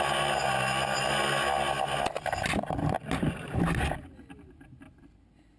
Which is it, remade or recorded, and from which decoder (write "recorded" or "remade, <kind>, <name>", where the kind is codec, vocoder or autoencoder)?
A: recorded